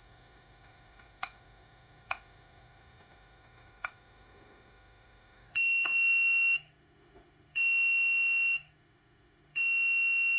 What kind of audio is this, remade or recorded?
remade